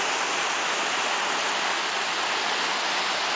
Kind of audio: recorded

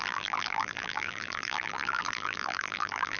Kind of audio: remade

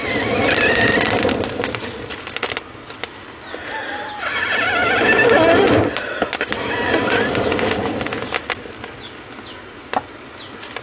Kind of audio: recorded